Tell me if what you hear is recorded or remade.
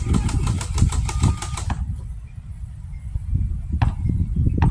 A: recorded